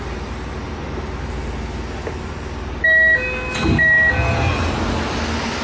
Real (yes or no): yes